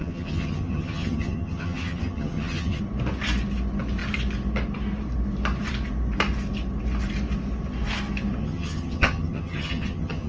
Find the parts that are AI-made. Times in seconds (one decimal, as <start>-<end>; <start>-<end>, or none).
0.0-2.8; 8.4-10.3